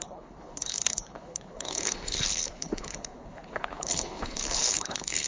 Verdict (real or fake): fake